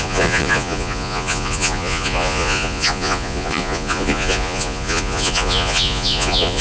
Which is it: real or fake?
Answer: fake